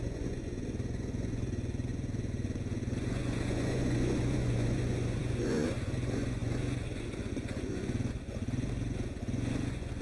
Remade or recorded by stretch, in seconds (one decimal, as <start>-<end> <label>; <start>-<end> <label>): 0.0-10.0 remade

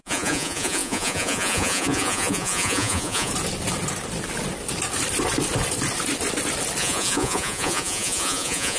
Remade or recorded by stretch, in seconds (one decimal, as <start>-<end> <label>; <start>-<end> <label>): 0.0-3.3 remade; 3.3-6.8 recorded; 6.8-8.8 remade

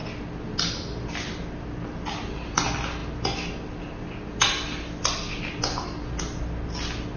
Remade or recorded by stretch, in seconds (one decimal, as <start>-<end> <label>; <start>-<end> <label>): 0.0-7.2 recorded

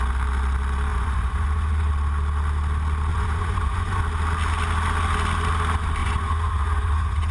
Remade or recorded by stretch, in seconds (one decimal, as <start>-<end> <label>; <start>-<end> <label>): 0.0-0.9 recorded; 0.9-1.9 remade; 1.9-3.1 recorded; 3.1-4.0 remade; 4.0-6.0 recorded; 6.0-7.3 remade

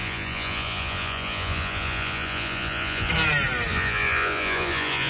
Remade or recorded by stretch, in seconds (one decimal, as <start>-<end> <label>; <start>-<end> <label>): 0.0-3.1 remade; 3.1-3.7 recorded; 3.7-5.1 remade